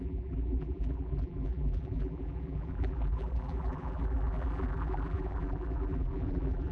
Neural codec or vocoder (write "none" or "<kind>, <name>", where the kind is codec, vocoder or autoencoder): vocoder, BigVGAN v2